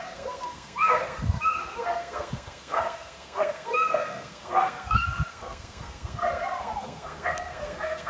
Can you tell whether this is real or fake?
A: fake